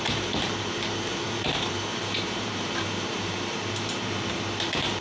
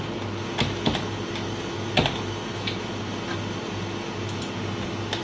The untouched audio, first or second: second